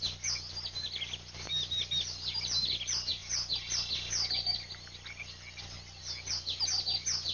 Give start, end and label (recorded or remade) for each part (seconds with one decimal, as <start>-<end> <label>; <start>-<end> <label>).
0.0-7.3 recorded